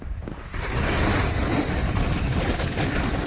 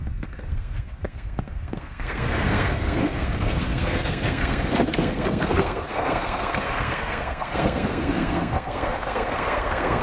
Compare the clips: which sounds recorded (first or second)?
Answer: first